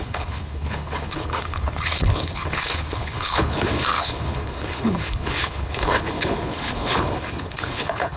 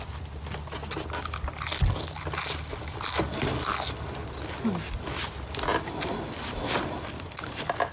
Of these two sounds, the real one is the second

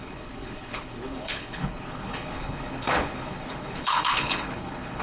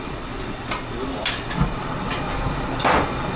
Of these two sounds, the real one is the second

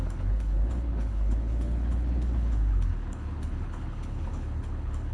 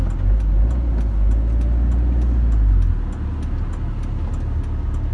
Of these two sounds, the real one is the second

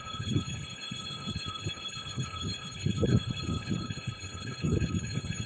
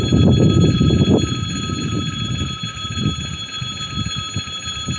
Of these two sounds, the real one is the second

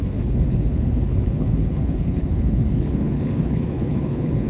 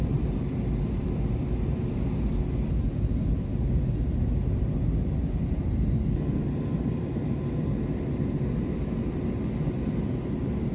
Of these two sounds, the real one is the second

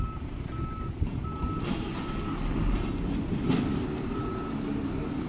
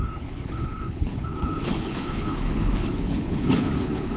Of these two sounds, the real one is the first